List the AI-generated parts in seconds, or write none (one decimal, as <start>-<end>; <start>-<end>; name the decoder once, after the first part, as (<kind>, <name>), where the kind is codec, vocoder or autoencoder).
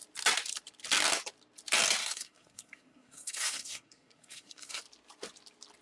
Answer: 2.0-4.8 (codec, SNAC)